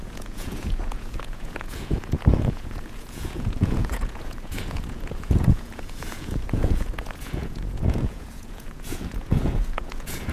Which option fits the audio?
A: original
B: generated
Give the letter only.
B